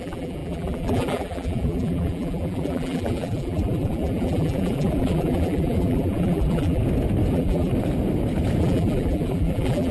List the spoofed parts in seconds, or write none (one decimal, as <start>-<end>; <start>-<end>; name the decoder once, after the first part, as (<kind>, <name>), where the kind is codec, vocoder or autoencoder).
0.0-6.8 (vocoder, BigVGAN v2); 7.3-7.7; 8.6-9.9